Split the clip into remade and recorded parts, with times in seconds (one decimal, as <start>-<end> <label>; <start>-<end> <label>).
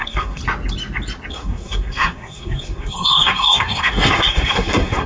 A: 0.0-0.4 remade; 0.4-1.3 recorded; 1.3-5.1 remade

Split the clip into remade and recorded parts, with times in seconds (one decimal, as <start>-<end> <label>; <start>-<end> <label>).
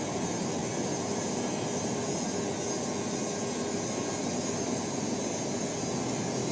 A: 0.0-6.5 recorded